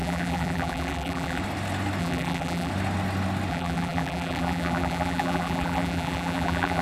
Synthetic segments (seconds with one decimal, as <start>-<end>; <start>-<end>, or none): 0.0-1.4; 2.0-2.7; 3.5-6.8